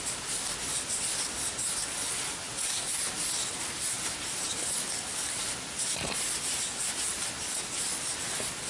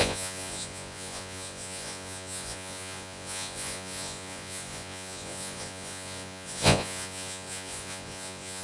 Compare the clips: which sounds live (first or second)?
first